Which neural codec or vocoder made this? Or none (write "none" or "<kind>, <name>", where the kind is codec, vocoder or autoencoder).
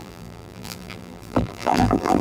vocoder, BigVGAN v2